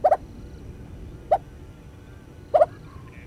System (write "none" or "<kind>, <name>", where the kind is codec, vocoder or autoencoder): none